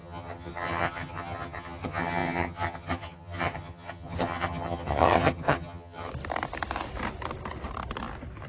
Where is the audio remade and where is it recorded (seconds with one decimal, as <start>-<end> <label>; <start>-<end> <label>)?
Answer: 0.0-6.1 remade; 6.1-8.5 recorded